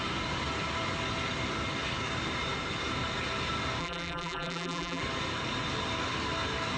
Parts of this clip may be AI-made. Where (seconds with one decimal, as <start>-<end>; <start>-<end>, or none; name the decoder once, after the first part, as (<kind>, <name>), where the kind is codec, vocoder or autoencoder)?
3.8-5.0 (vocoder, BigVGAN v2)